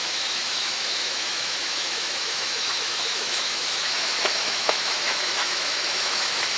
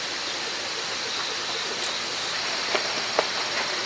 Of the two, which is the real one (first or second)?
second